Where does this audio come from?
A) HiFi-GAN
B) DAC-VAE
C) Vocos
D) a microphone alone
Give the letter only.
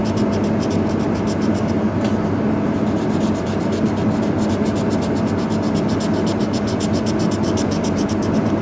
D